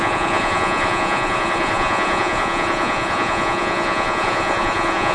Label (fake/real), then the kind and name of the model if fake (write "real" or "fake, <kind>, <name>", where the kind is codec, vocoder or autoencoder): fake, vocoder, Vocos